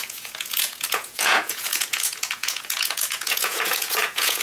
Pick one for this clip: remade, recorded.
remade